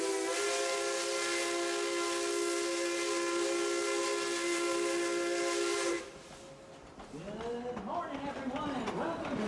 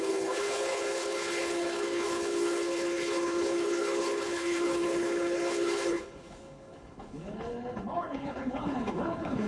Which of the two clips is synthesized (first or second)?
second